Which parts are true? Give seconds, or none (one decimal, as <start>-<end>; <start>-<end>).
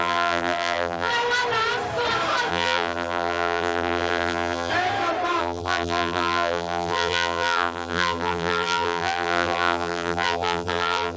1.1-2.5; 4.7-5.4